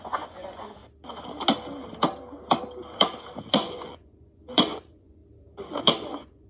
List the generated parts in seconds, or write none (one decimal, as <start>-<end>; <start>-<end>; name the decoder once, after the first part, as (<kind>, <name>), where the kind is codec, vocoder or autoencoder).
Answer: 0.0-0.8 (vocoder, Vocos); 3.5-5.2; 5.8-6.5